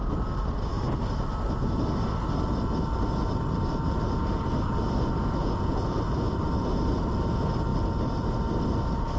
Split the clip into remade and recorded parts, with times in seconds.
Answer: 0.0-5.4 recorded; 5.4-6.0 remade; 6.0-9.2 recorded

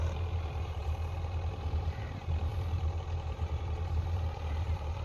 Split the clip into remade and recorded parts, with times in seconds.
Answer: 0.0-5.0 remade

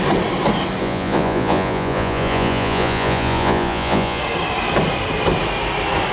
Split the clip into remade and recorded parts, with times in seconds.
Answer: 0.0-0.8 recorded; 0.8-4.2 remade; 4.2-6.1 recorded

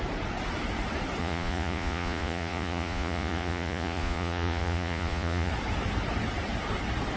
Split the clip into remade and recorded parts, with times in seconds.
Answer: 0.0-1.2 recorded; 1.2-5.5 remade; 5.5-7.2 recorded

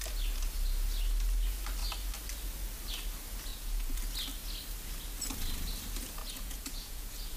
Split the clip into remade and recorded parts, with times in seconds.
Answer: 0.0-3.5 recorded; 3.5-4.0 remade; 4.0-6.2 recorded; 6.2-7.4 remade